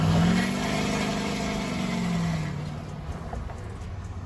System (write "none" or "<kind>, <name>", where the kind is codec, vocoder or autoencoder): none